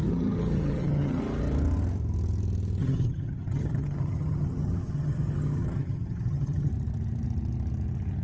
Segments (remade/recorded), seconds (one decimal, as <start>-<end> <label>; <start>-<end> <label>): 0.0-1.2 remade; 1.2-2.8 recorded; 2.8-6.7 remade; 6.7-8.2 recorded